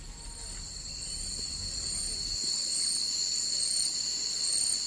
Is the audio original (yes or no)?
yes